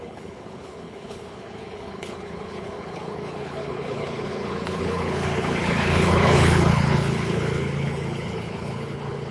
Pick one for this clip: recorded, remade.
remade